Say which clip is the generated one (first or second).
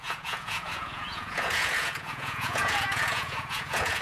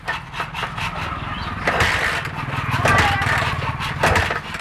first